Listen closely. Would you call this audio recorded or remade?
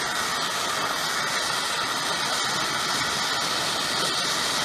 recorded